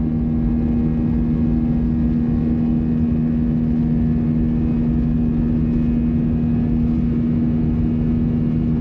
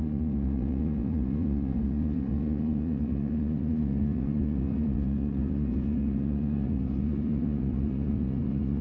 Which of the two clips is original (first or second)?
first